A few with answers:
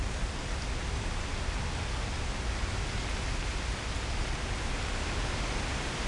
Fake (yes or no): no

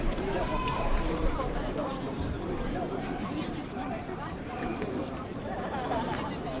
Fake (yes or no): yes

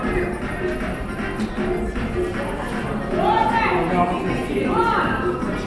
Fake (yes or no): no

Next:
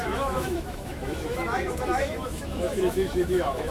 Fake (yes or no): yes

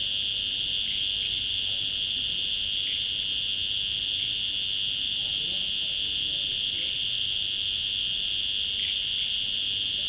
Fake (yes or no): no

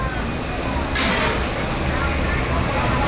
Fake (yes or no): no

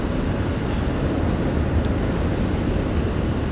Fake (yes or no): no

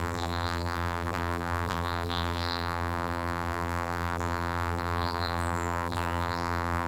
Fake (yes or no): yes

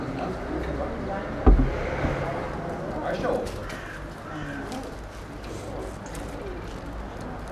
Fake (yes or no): no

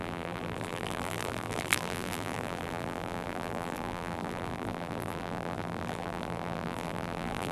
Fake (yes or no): yes